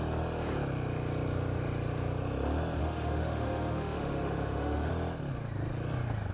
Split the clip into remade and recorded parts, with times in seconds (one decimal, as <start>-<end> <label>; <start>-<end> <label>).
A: 0.0-2.8 recorded; 2.8-4.9 remade; 4.9-6.3 recorded